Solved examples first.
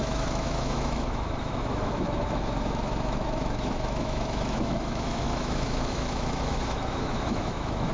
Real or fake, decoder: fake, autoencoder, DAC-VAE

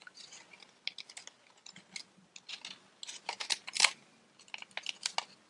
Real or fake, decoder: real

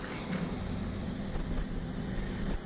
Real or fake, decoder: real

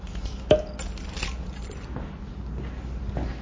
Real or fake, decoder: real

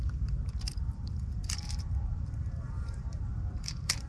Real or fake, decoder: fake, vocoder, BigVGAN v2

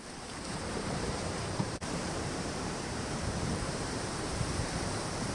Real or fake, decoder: fake, vocoder, BigVGAN v2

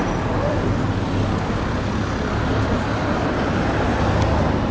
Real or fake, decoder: real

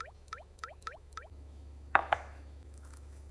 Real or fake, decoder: fake, autoencoder, DAC-VAE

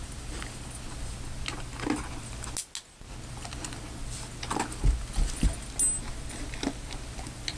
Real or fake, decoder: real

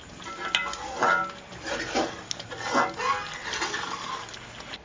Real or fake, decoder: real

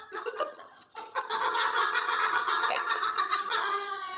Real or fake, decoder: fake, vocoder, HiFi-GAN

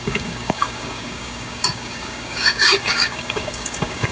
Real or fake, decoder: fake, codec, DAC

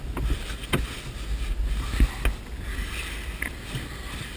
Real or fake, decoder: real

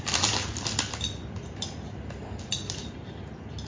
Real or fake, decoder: real